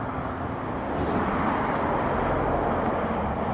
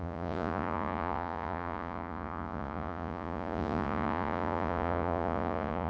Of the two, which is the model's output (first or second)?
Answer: second